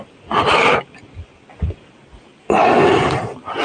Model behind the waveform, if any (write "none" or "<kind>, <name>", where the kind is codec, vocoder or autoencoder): none